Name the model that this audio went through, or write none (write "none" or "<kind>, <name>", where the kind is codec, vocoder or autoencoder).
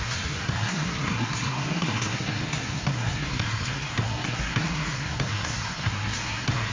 codec, SNAC